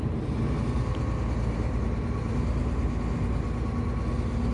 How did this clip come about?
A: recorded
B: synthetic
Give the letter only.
A